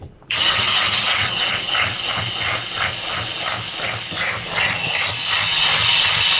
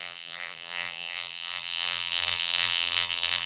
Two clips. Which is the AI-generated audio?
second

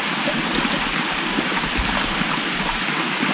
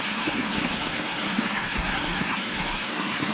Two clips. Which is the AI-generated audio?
second